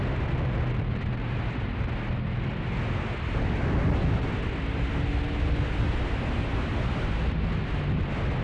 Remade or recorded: recorded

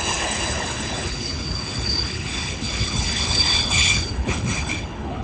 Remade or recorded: remade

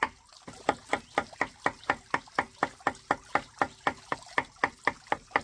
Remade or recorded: recorded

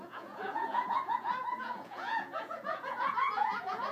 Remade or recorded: remade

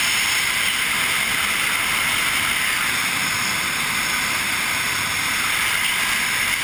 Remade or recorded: recorded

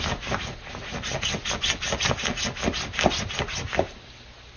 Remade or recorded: recorded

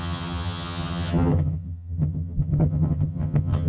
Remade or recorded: remade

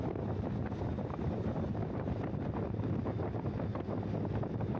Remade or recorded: remade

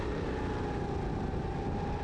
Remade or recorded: recorded